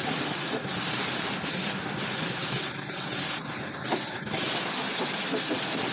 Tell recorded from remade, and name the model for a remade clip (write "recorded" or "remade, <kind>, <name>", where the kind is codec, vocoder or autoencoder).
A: recorded